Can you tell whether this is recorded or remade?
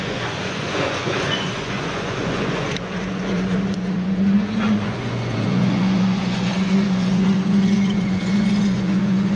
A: remade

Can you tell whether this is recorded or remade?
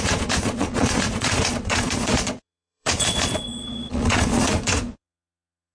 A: remade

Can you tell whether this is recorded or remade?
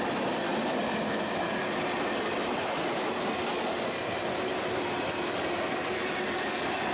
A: recorded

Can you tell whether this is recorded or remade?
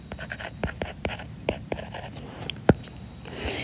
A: remade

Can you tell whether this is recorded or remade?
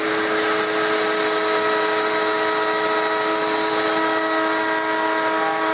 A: recorded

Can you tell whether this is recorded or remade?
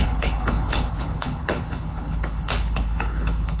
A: remade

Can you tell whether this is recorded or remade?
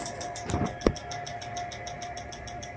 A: remade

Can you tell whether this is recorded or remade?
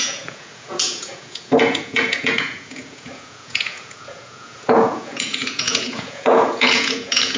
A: remade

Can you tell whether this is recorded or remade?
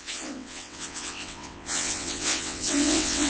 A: remade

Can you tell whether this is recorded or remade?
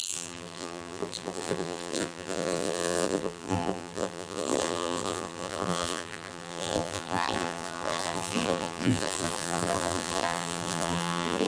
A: remade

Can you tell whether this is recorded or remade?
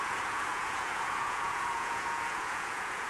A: remade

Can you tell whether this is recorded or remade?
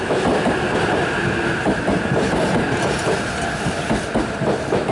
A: recorded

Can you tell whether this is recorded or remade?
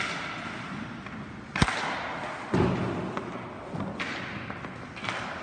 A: recorded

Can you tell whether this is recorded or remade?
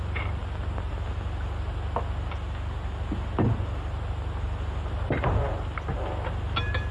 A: recorded